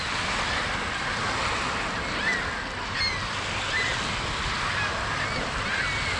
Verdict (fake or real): real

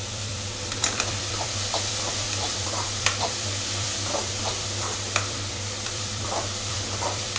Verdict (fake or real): fake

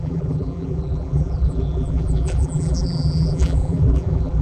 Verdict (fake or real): fake